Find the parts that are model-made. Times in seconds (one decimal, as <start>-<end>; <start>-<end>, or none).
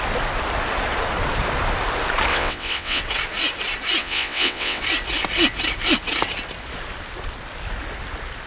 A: 2.3-3.0; 4.0-4.8